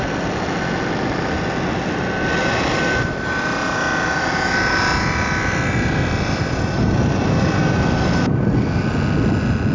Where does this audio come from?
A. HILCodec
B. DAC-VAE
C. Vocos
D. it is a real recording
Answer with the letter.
D